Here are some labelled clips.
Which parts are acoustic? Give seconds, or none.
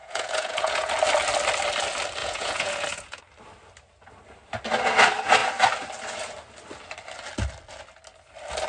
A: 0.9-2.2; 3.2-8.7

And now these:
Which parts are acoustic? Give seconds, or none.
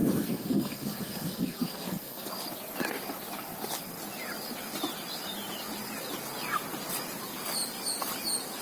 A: 2.3-8.6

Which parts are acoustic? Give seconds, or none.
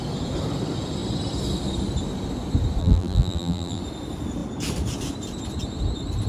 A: 0.0-2.8; 3.8-6.3